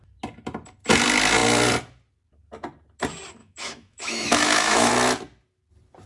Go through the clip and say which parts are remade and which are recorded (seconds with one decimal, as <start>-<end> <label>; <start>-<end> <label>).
0.0-3.4 recorded; 3.4-4.9 remade; 4.9-6.1 recorded